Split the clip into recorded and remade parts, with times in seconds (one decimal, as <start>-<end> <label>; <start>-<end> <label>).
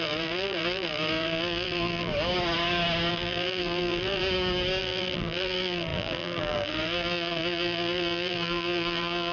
0.0-2.1 remade; 2.1-3.1 recorded; 3.1-4.2 remade; 4.2-4.8 recorded; 4.8-9.3 remade